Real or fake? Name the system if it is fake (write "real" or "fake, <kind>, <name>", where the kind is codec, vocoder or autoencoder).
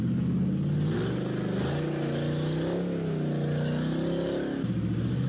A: real